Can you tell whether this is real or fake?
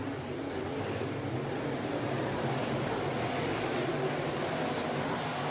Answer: real